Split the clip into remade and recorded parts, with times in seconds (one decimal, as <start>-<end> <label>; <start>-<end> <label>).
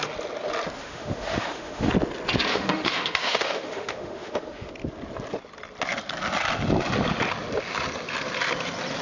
0.0-0.8 recorded; 0.8-1.9 remade; 1.9-2.5 recorded; 2.5-4.7 remade; 4.7-9.0 recorded